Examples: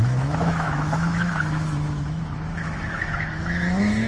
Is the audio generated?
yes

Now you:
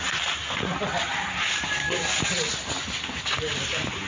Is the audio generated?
no